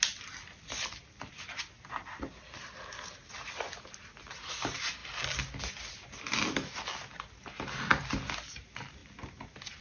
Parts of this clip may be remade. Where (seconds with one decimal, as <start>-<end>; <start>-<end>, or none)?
none